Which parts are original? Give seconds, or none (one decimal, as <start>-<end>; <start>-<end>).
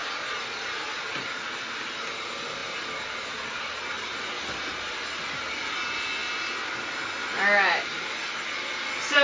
0.0-9.2